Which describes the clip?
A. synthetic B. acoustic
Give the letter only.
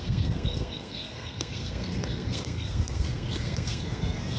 A